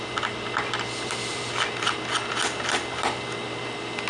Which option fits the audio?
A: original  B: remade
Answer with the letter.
A